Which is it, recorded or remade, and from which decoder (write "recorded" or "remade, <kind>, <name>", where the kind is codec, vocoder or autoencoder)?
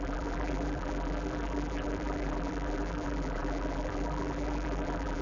remade, vocoder, BigVGAN v2